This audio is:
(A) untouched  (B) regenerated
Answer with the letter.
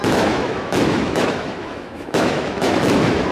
B